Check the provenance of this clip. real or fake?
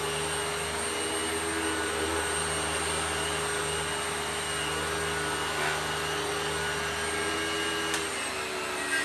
real